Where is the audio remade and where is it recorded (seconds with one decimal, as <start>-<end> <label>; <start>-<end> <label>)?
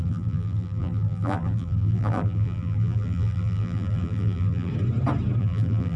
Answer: 0.0-4.7 remade; 4.7-5.4 recorded; 5.4-6.0 remade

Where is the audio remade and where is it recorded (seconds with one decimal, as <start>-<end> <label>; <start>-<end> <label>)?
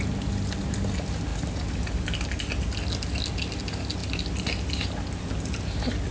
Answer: 0.0-6.1 recorded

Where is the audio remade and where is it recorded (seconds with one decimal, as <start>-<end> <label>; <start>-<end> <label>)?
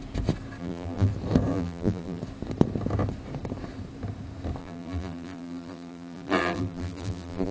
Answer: 0.0-0.6 recorded; 0.6-1.1 remade; 1.1-1.5 recorded; 1.5-2.2 remade; 2.2-4.6 recorded; 4.6-7.5 remade